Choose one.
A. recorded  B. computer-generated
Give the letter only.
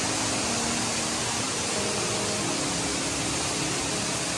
A